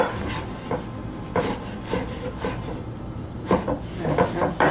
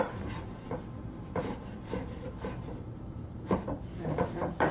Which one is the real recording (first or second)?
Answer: first